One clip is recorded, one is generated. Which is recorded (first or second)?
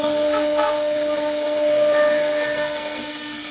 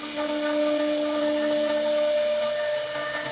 second